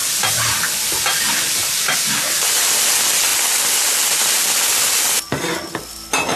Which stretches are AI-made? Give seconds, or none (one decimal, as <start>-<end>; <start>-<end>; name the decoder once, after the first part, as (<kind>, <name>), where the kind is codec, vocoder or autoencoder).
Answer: none